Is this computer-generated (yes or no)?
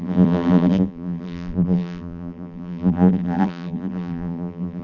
yes